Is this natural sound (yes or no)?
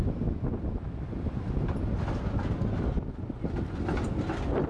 yes